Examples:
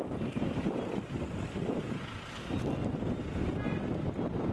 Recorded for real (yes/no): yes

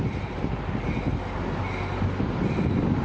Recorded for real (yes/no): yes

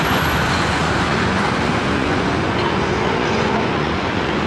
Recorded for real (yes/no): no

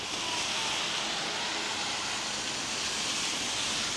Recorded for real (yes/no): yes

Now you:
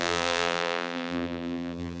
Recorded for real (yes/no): no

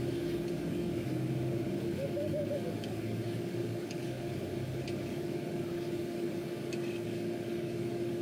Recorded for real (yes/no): no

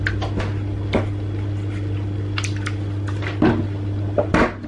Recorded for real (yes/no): yes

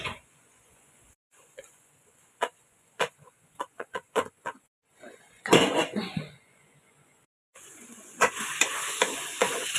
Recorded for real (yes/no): no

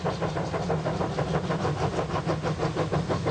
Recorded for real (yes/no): yes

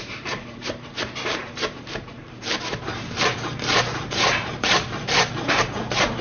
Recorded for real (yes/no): no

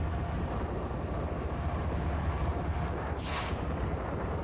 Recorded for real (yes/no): no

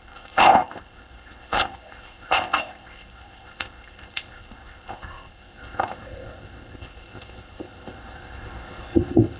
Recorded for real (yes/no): no